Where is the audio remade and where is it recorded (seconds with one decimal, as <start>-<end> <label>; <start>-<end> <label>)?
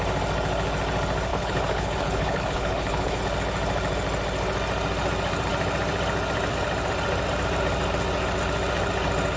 0.0-1.3 recorded; 1.3-3.2 remade; 3.2-9.4 recorded